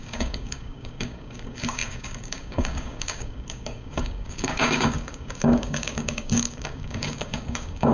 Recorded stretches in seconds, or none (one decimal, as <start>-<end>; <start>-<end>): none